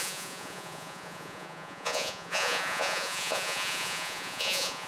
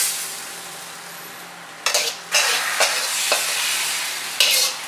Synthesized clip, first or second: first